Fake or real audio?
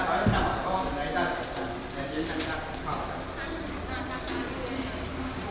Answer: real